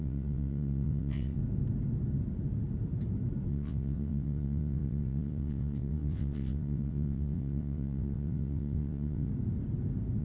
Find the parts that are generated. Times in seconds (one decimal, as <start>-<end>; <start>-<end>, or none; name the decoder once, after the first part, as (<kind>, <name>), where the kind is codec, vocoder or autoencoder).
0.0-1.4 (vocoder, WaveNeXt); 3.5-9.3

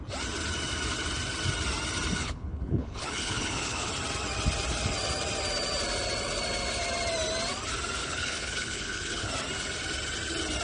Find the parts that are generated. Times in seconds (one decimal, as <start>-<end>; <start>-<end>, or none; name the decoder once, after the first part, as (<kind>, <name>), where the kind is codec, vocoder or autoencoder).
2.2-3.9 (codec, HILCodec); 8.0-9.3

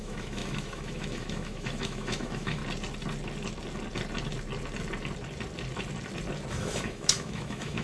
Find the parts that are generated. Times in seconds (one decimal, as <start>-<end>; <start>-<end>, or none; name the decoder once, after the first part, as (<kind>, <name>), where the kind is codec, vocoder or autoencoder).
0.0-2.6 (autoencoder, DAC-VAE); 6.5-7.8

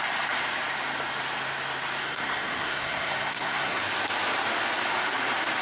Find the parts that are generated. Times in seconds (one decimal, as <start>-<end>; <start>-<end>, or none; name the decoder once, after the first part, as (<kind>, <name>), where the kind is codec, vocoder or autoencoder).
2.0-3.8 (codec, SNAC)

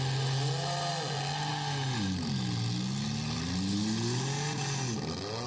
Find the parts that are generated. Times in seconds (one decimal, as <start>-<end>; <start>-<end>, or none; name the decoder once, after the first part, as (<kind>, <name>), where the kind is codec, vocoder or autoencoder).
none